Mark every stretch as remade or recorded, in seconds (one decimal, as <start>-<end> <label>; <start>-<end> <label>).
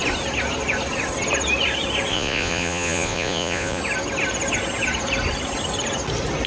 0.0-2.1 recorded; 2.1-3.8 remade; 3.8-6.5 recorded